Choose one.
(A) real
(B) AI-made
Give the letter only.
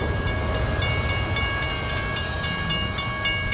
A